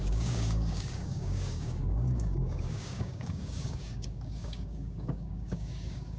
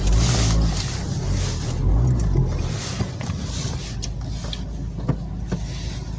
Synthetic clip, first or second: first